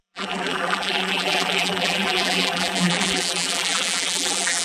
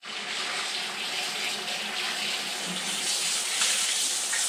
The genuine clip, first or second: second